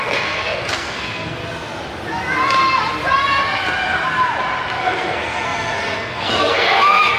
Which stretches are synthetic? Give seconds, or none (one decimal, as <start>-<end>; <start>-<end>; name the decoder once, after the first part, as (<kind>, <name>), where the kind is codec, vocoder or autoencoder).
0.0-1.4 (codec, SNAC); 4.8-7.2